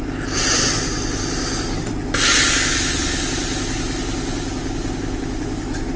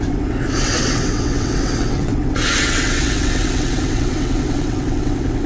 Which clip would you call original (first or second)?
first